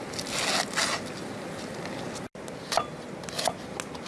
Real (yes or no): yes